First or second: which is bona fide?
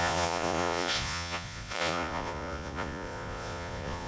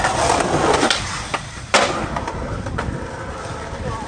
second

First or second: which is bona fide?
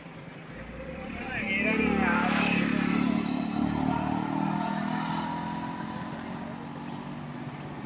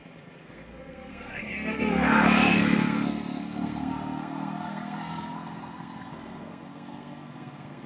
first